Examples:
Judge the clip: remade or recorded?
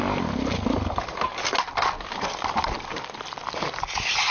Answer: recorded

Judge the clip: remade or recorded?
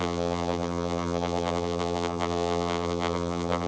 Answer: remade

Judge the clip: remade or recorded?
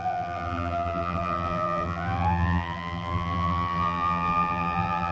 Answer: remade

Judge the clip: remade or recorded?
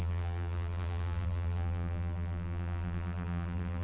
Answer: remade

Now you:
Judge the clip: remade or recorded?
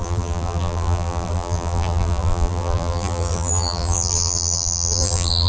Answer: remade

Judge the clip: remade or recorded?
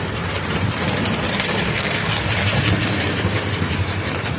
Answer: remade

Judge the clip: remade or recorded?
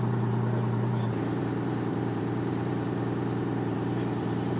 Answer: remade